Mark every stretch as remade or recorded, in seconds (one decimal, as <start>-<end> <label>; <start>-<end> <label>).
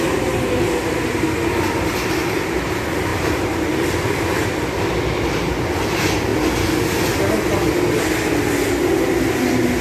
0.0-3.1 recorded; 3.1-4.6 remade; 4.6-9.8 recorded